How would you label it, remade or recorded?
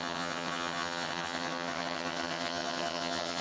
remade